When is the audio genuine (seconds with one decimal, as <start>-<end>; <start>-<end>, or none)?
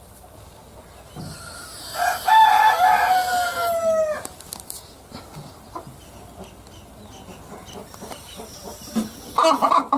0.0-7.8; 9.4-10.0